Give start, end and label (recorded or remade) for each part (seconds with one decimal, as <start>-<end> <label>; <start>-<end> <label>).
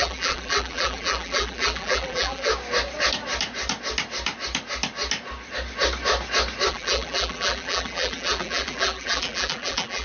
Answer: 0.0-2.5 remade; 2.5-6.7 recorded; 6.7-10.0 remade